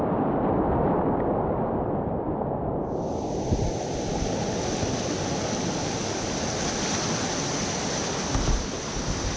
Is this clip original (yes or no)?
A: yes